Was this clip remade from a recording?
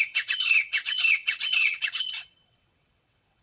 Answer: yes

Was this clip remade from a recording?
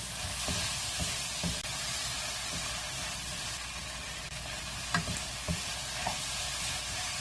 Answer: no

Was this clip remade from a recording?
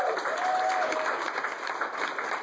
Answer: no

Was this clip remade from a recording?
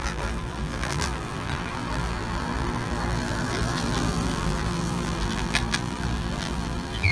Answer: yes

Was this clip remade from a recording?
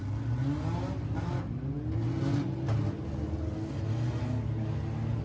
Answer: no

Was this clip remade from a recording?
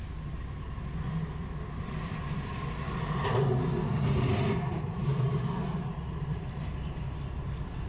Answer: no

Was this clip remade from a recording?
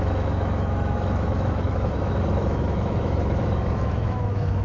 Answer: yes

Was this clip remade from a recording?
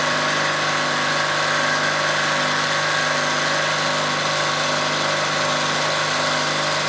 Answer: no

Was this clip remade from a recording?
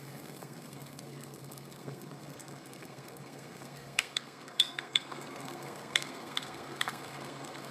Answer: yes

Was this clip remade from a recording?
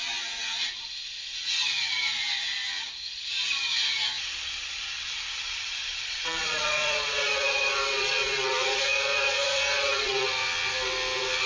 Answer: yes